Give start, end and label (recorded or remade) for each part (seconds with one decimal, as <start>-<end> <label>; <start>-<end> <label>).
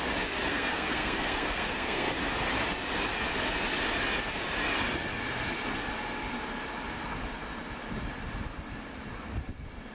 0.0-0.5 recorded; 0.5-2.1 remade; 2.1-9.9 recorded